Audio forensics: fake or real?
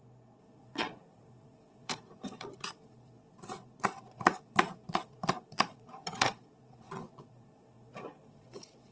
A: fake